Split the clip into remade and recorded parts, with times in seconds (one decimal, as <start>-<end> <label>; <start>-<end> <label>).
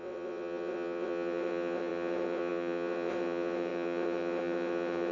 0.0-5.1 remade